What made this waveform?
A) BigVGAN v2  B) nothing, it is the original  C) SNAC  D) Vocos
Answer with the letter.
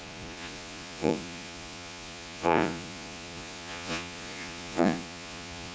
D